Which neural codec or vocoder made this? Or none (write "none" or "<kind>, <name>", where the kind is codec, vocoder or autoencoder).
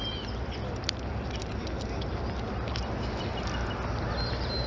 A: none